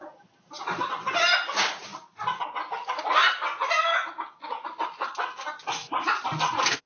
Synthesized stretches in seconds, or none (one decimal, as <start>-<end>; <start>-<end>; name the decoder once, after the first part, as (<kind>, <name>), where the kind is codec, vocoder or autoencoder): none